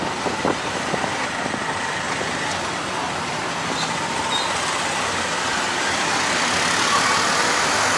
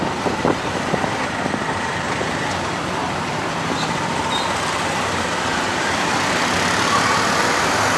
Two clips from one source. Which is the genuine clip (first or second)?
first